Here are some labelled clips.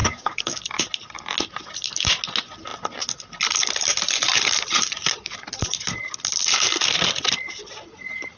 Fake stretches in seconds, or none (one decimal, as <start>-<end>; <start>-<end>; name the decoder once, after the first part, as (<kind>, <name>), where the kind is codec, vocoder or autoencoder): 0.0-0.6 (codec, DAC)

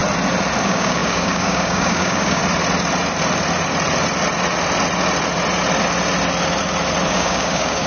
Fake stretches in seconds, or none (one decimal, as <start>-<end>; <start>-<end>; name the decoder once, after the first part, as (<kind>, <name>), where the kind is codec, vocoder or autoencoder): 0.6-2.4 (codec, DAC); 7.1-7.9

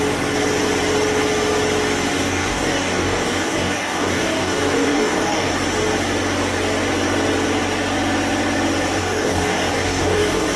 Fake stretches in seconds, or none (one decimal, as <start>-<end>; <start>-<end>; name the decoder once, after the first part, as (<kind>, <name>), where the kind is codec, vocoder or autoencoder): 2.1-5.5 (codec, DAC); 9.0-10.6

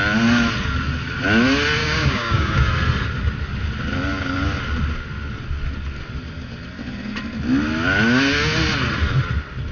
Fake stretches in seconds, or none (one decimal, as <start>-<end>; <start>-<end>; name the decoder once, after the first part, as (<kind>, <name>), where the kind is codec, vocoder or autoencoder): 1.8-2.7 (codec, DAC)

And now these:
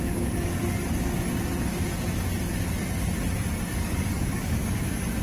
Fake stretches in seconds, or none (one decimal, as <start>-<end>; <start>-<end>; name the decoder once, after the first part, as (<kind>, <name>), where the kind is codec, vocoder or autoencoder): 0.0-0.6 (codec, DAC); 3.7-5.2

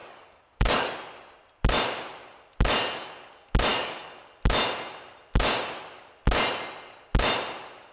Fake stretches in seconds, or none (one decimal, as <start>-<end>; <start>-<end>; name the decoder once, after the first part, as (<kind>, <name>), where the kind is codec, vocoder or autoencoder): 0.0-0.9 (codec, DAC); 3.7-4.2

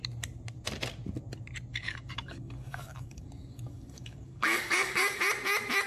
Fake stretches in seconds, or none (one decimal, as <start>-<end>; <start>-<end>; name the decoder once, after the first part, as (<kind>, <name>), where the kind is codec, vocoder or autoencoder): 1.7-5.2 (codec, DAC)